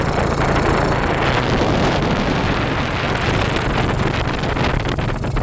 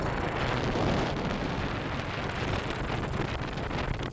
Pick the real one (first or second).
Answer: first